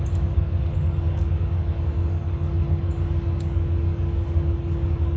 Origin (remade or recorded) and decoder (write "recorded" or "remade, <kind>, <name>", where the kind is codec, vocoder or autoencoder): remade, codec, DAC